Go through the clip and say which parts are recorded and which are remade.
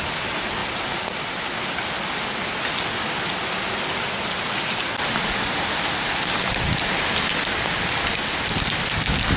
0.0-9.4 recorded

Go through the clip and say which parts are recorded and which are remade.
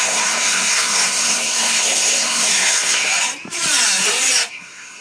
0.0-3.1 remade; 3.1-4.5 recorded; 4.5-5.0 remade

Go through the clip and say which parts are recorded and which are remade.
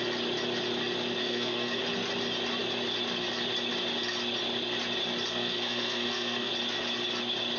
0.0-1.2 recorded; 1.2-1.8 remade; 1.8-5.3 recorded; 5.3-6.5 remade; 6.5-7.6 recorded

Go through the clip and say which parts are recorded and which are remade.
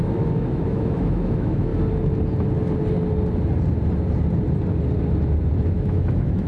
0.0-1.7 remade; 1.7-5.6 recorded; 5.6-6.5 remade